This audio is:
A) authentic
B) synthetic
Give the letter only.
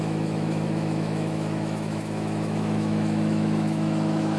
B